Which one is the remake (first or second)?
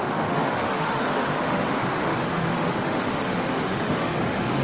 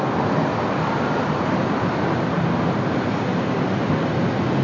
first